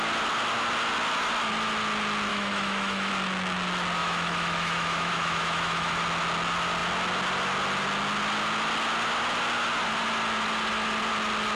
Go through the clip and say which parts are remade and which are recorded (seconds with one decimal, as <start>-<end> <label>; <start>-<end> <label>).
0.0-2.3 recorded; 2.3-3.1 remade; 3.1-4.0 recorded; 4.0-6.0 remade; 6.0-11.5 recorded